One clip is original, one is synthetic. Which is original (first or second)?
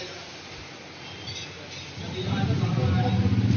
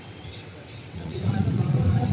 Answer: first